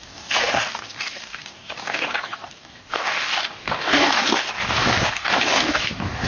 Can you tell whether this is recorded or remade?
remade